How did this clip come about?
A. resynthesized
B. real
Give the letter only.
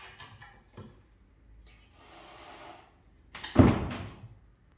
B